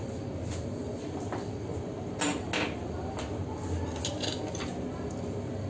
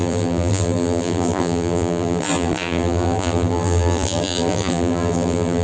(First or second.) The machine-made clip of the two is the second